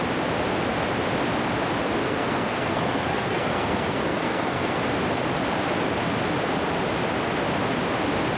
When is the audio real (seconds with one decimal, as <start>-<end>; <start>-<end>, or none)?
0.0-2.0; 4.8-8.4